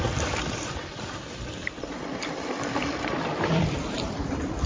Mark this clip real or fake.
fake